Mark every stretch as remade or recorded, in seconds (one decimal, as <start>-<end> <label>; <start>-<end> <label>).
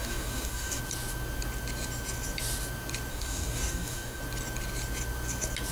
0.0-0.8 remade; 0.8-3.1 recorded; 3.1-4.2 remade; 4.2-5.7 recorded